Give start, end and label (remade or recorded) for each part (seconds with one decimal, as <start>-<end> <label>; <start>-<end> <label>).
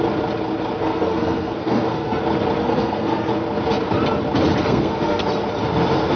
0.0-0.8 recorded; 0.8-2.2 remade; 2.2-2.6 recorded; 2.6-3.3 remade; 3.3-4.6 recorded; 4.6-5.2 remade; 5.2-6.2 recorded